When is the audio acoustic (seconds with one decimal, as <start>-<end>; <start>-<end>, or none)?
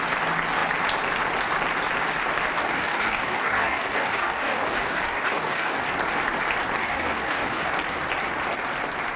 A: 0.0-2.6; 5.8-6.8; 7.7-9.2